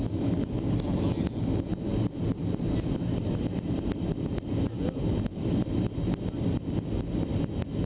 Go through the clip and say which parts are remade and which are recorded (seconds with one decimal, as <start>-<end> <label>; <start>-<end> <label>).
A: 0.0-7.9 recorded